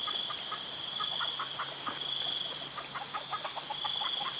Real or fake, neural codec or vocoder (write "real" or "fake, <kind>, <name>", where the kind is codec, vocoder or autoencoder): real